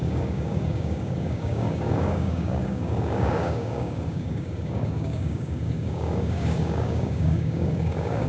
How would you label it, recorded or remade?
remade